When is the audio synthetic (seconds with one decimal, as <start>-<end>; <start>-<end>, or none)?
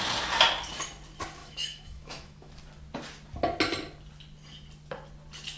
1.4-2.5